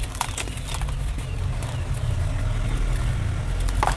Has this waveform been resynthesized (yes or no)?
no